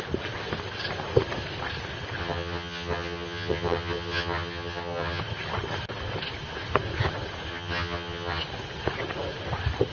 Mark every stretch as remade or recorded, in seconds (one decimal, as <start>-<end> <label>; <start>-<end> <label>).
0.0-2.2 recorded; 2.2-5.2 remade; 5.2-7.5 recorded; 7.5-8.4 remade; 8.4-9.9 recorded